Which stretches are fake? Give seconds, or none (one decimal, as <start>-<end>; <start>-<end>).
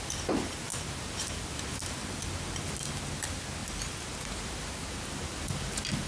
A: none